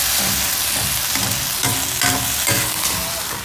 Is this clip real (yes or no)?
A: yes